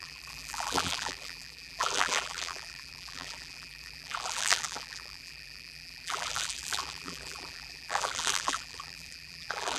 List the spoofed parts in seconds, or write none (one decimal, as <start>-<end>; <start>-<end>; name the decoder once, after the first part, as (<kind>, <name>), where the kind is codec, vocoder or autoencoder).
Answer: 0.0-9.8 (vocoder, BigVGAN v2)